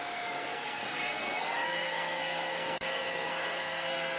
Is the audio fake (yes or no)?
yes